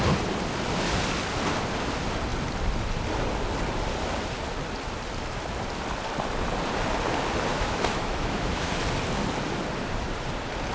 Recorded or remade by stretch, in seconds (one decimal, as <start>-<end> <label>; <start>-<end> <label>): 0.0-7.5 recorded; 7.5-8.7 remade; 8.7-10.7 recorded